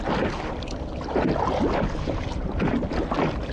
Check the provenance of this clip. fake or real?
real